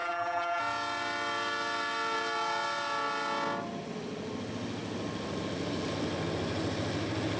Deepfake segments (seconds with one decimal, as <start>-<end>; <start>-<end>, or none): 0.0-0.6